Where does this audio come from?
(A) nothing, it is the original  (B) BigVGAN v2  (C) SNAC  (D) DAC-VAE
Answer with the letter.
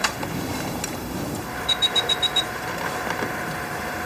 B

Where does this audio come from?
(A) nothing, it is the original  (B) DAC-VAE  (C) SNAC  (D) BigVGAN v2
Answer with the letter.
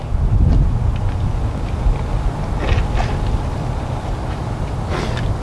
A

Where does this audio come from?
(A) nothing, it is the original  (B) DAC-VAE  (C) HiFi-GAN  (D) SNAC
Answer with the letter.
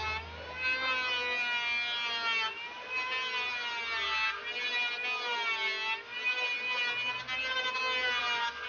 A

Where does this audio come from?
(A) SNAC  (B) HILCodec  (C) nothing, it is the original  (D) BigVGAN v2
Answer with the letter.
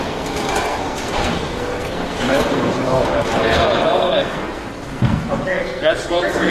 A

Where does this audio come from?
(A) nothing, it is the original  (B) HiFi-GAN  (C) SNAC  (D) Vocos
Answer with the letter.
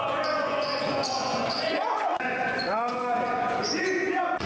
D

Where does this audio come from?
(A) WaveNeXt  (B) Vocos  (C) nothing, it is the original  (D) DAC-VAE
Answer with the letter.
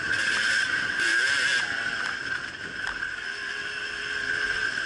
C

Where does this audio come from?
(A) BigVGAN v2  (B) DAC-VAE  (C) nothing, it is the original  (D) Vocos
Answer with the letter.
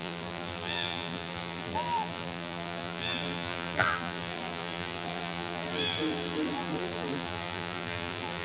A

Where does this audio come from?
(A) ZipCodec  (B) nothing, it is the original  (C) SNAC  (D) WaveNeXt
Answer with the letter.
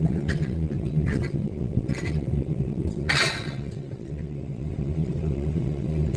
D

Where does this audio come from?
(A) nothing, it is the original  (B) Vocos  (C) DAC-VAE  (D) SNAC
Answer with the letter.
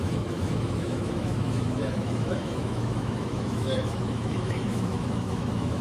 C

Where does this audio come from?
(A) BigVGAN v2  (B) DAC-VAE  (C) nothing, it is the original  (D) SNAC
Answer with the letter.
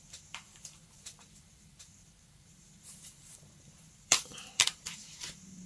A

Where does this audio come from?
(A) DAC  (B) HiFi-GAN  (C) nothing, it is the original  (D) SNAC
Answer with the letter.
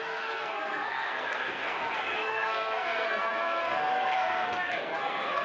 D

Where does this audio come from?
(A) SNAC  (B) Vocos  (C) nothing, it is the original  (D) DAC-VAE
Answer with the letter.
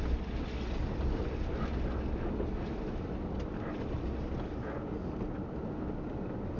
C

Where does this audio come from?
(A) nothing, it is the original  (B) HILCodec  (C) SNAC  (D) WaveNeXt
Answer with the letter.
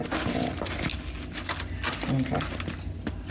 A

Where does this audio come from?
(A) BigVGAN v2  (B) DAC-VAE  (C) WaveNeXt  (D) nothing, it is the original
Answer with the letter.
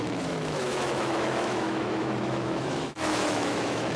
B